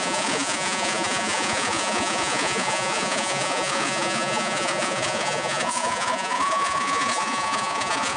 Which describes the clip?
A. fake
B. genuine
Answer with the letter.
A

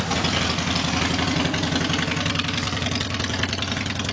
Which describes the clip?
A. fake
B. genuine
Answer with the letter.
B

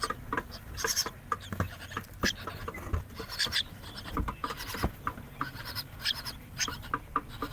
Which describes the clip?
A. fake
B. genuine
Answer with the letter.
B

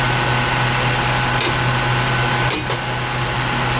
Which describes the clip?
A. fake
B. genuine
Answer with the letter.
B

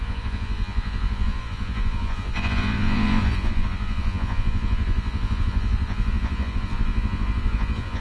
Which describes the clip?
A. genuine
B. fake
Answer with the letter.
B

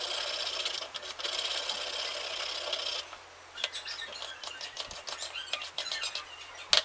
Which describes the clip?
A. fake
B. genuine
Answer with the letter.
B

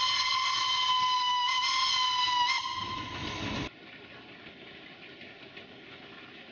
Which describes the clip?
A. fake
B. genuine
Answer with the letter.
B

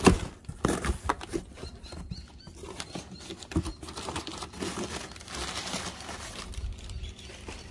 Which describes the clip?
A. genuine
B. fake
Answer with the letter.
A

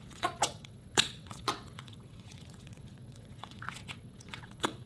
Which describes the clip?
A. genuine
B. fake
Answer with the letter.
B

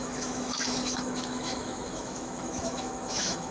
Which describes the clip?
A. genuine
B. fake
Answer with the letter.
B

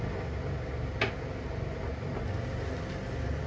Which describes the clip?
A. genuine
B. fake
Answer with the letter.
A